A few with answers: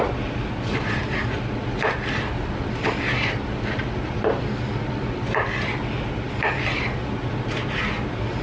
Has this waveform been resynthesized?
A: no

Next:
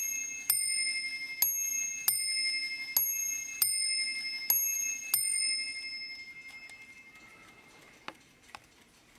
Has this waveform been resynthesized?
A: no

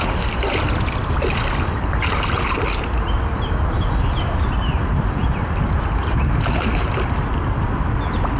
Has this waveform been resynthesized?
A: no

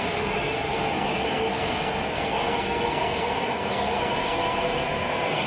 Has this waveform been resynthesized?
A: yes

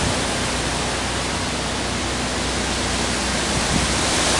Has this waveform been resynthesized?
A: no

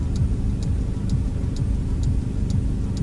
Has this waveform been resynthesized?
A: no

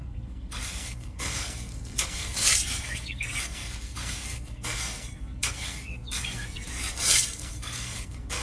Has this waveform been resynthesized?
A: yes